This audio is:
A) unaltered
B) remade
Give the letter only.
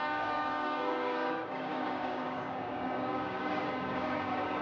B